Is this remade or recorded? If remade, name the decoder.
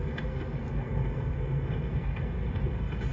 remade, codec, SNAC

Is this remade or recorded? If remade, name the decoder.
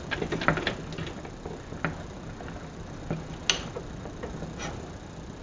recorded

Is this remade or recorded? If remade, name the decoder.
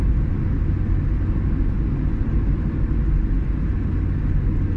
recorded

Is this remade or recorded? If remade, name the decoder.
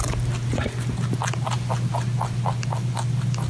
recorded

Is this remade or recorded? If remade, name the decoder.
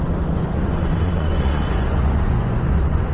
remade, vocoder, Vocos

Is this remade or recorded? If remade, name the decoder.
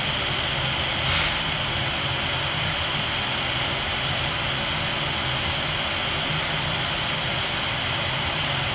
recorded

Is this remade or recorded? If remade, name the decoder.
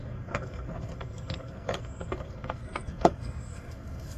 remade, codec, SNAC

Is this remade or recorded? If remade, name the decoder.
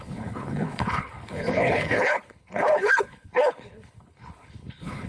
remade, codec, HILCodec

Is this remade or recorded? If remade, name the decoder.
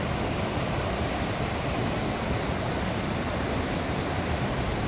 recorded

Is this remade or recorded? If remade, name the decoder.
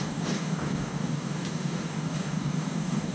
remade, codec, DAC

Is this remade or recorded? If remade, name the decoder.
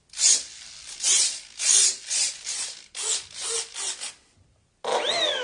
recorded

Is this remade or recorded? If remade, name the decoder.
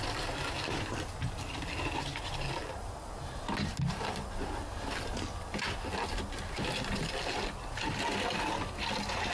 recorded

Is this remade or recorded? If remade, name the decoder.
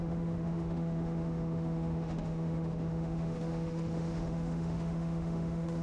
remade, autoencoder, DAC-VAE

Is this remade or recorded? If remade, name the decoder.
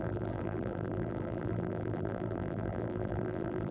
remade, vocoder, BigVGAN v2